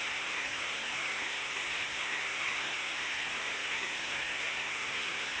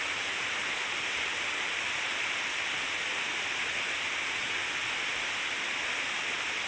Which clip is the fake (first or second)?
first